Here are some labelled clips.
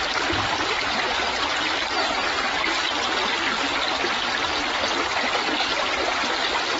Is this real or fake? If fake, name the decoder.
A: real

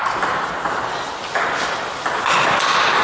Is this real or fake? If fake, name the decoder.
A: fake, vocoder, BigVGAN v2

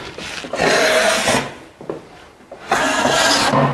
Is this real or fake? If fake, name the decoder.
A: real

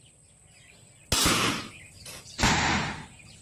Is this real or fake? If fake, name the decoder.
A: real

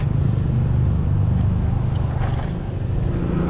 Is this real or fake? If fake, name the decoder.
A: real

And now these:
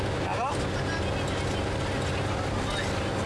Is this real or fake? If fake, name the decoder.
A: real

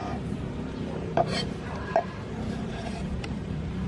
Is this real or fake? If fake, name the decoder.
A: fake, vocoder, BigVGAN v2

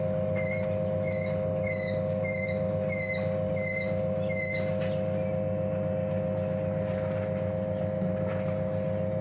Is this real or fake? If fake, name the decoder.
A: real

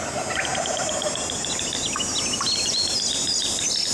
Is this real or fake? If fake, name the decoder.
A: real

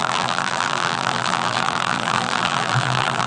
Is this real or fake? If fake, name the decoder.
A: fake, vocoder, BigVGAN v2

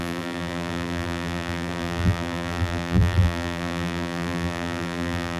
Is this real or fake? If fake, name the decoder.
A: fake, vocoder, BigVGAN v2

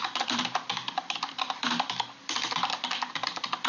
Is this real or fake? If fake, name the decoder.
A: fake, vocoder, BigVGAN v2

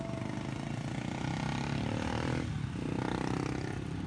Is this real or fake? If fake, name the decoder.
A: real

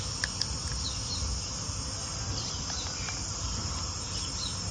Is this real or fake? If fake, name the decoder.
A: real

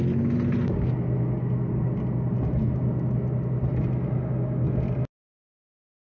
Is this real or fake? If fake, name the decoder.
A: real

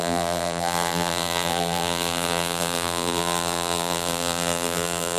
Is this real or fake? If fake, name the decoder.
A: fake, vocoder, BigVGAN v2